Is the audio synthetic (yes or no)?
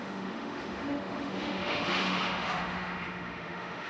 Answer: yes